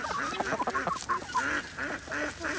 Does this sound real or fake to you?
real